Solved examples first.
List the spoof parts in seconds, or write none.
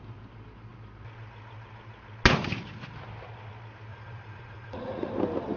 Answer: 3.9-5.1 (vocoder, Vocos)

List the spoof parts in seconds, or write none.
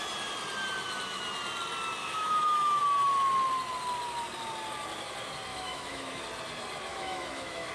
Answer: 2.0-2.8 (autoencoder, DAC-VAE); 5.5-6.2; 6.9-7.7